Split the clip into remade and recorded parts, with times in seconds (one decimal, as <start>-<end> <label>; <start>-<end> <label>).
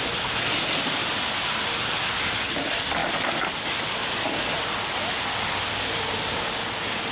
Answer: 0.0-7.1 recorded